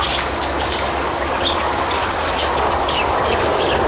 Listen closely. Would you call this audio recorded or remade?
remade